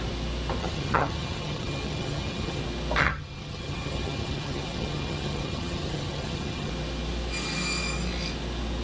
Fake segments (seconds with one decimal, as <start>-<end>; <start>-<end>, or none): 0.6-2.6; 3.0-6.7